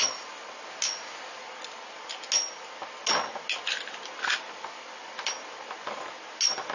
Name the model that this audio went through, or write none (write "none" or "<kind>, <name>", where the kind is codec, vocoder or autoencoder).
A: none